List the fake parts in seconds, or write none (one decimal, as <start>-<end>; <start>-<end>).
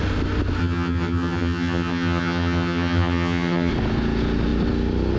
0.6-3.7